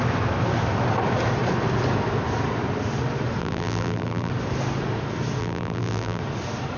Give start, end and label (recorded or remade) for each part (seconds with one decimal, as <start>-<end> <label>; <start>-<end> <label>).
0.0-3.4 recorded; 3.4-4.3 remade; 4.3-5.4 recorded; 5.4-6.2 remade; 6.2-6.8 recorded